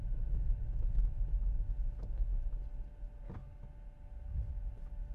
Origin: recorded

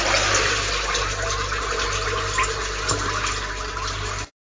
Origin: recorded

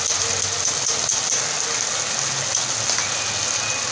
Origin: recorded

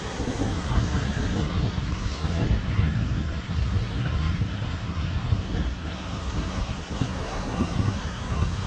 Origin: remade